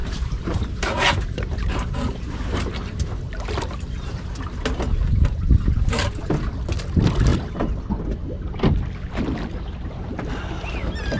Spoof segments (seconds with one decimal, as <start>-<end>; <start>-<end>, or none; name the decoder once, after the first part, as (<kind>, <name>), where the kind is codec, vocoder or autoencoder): 0.0-3.2 (vocoder, BigVGAN v2); 7.3-7.8